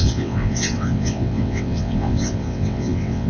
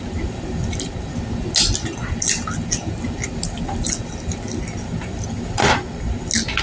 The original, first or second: second